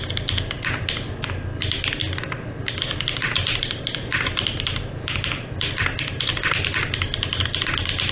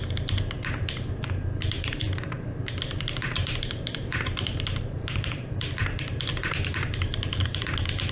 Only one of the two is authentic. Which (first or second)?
first